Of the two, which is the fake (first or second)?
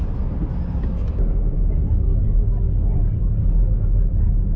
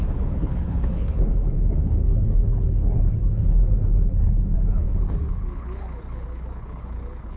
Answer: second